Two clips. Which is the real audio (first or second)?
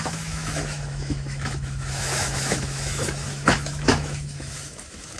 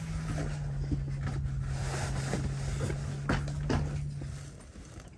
second